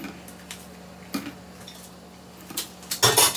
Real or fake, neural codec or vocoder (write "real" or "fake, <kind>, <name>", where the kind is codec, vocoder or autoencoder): real